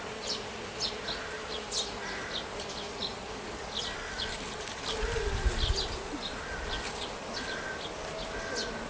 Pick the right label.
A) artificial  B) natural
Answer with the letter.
B